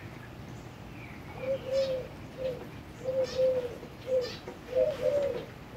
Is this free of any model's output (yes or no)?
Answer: yes